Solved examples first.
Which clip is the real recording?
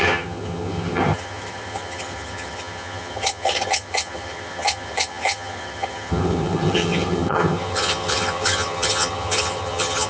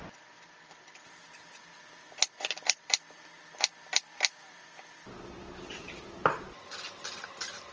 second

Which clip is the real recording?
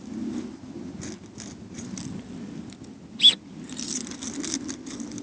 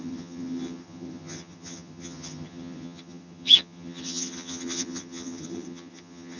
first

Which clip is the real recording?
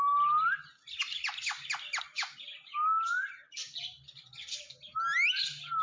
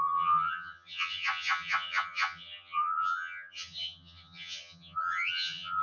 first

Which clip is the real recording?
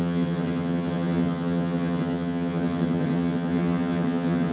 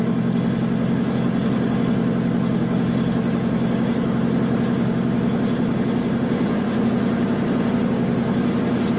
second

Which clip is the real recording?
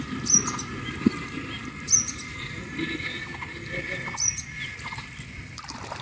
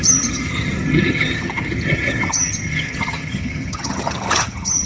first